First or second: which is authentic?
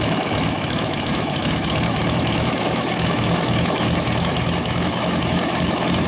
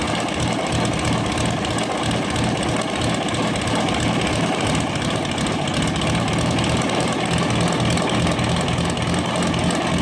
second